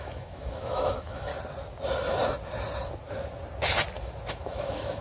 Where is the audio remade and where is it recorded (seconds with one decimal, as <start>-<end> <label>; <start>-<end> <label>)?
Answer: 0.0-1.3 remade; 1.3-4.3 recorded; 4.3-5.0 remade